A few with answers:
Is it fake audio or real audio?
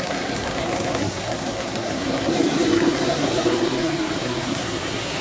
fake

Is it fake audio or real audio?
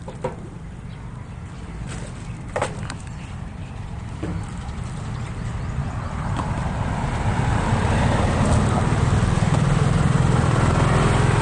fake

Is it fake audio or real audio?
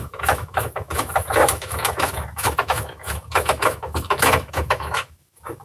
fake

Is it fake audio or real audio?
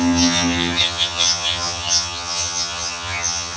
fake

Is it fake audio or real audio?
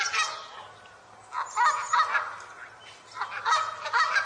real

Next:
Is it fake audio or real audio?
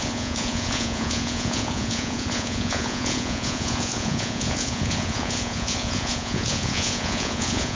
fake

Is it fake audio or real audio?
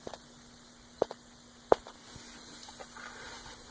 real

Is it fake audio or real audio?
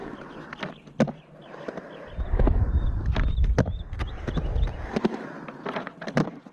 real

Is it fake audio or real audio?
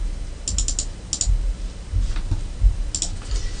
real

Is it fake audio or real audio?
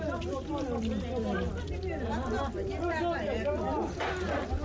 real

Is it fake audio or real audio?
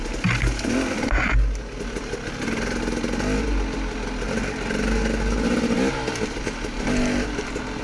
real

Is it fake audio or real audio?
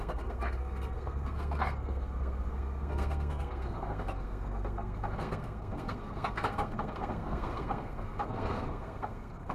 fake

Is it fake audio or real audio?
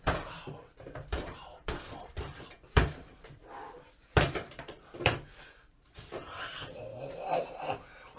fake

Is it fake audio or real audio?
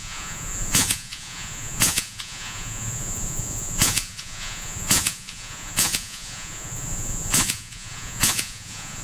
fake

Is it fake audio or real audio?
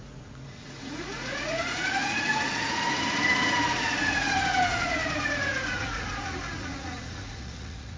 fake